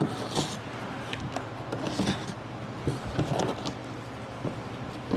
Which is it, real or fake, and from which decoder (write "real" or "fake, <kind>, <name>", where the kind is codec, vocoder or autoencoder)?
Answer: real